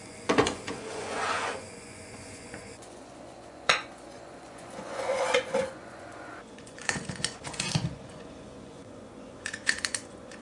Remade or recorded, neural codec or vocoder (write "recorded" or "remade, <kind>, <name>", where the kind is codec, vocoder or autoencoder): remade, vocoder, Vocos